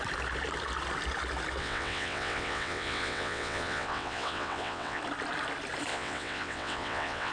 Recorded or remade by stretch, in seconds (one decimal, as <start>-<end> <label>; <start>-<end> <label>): 0.0-1.6 recorded; 1.6-5.0 remade; 5.0-5.9 recorded; 5.9-7.3 remade